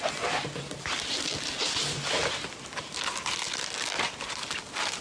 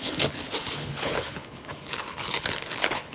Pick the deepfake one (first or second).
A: second